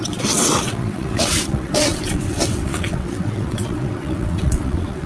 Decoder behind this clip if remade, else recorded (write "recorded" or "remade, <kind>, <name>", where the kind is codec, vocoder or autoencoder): remade, vocoder, WaveNeXt